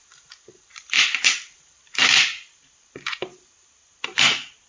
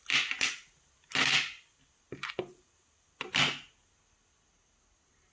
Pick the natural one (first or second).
second